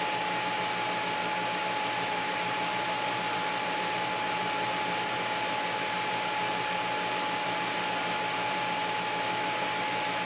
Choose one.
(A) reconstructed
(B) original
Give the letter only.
B